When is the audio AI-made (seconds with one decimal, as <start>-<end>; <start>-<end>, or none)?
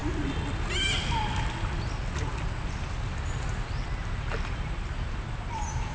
none